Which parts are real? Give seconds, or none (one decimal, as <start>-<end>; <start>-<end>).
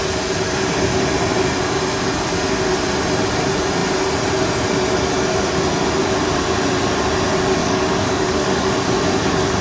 0.0-7.6; 8.7-9.6